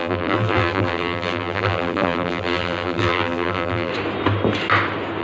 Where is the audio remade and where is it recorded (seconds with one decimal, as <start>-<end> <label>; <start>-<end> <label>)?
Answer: 0.0-3.9 remade; 3.9-5.2 recorded

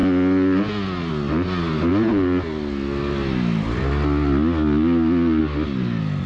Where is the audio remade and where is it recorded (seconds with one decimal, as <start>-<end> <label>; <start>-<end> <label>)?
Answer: 0.0-6.3 recorded

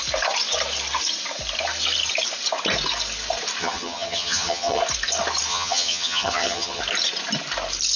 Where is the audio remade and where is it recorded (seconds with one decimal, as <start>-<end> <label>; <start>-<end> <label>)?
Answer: 0.0-3.6 recorded; 3.6-4.8 remade; 4.8-5.5 recorded; 5.5-6.8 remade; 6.8-8.0 recorded